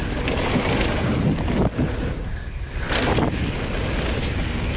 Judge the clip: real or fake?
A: real